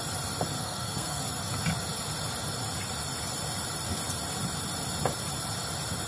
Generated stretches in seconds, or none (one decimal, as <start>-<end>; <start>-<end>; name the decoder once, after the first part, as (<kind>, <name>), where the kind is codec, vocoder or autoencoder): 0.6-1.2 (codec, SNAC)